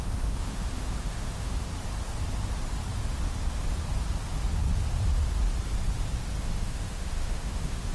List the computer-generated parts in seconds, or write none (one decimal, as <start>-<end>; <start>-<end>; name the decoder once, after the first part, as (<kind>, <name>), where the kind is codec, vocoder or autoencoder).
0.0-1.7 (autoencoder, DAC-VAE); 6.4-7.9